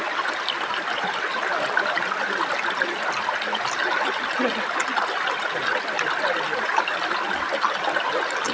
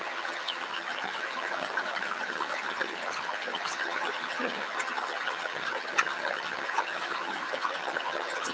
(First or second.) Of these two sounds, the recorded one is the first